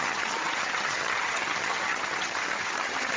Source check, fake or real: fake